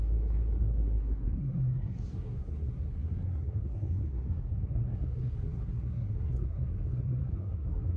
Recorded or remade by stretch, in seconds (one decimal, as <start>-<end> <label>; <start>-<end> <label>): 0.0-8.0 remade